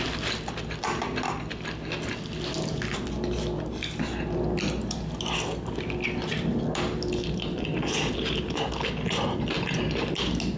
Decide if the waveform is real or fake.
real